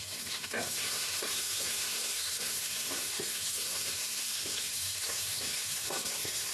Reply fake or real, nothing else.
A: fake